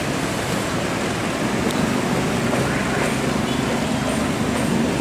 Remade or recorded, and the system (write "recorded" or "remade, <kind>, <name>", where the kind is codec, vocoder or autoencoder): recorded